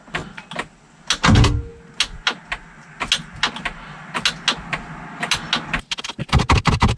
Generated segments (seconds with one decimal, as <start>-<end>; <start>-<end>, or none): none